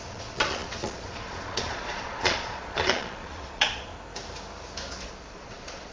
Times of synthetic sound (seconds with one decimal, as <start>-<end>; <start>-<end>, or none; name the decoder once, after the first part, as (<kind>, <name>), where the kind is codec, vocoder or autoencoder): 0.0-3.9 (vocoder, Vocos); 4.9-5.9